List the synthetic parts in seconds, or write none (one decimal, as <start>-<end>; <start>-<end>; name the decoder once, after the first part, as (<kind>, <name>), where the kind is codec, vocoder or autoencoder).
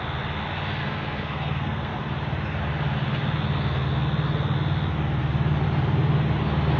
0.8-1.9 (codec, SNAC)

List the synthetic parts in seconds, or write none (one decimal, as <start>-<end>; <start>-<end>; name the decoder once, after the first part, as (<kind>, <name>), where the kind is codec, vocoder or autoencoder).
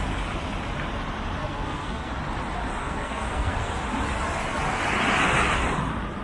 1.4-2.1 (codec, SNAC); 2.8-3.7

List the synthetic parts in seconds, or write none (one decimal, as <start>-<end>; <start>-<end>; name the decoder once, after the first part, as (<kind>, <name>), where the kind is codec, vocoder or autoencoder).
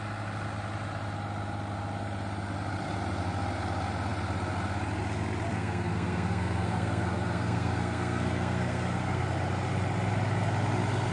5.5-9.2 (codec, SNAC)